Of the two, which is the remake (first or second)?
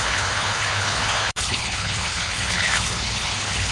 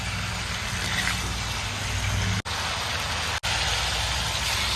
first